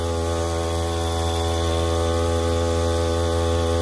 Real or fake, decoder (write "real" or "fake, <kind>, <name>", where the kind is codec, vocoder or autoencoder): real